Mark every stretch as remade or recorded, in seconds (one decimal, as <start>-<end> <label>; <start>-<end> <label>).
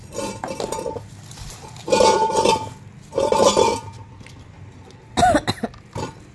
0.0-6.3 recorded